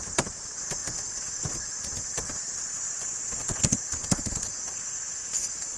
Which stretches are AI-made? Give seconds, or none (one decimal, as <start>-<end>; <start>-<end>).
5.2-5.8